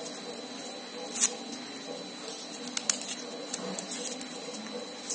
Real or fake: real